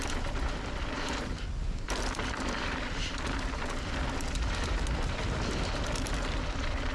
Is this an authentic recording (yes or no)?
yes